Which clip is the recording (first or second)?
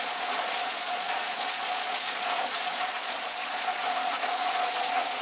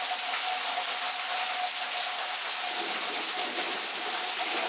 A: second